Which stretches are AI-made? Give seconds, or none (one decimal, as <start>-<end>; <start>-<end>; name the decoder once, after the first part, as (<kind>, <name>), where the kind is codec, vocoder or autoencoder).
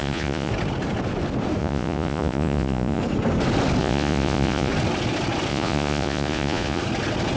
0.0-0.5 (vocoder, Vocos); 1.6-3.0; 3.8-4.7; 5.5-6.8